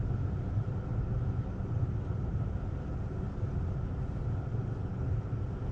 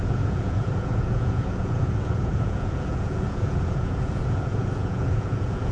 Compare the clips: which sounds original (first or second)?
first